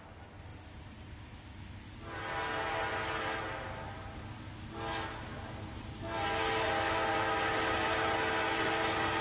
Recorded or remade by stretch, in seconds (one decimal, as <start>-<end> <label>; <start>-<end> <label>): 0.0-9.2 recorded